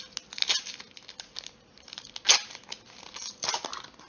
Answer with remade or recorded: recorded